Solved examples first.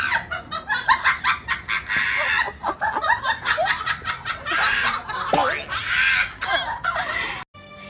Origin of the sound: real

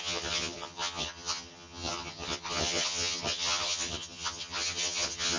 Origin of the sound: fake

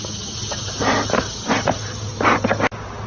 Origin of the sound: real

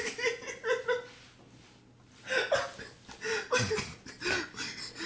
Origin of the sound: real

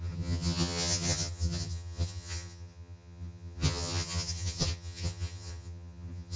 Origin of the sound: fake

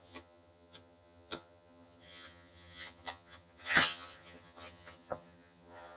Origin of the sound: fake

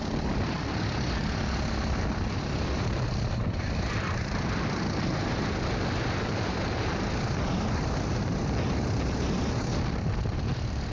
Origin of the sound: real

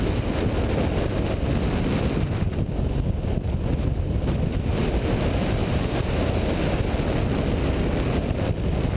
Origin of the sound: real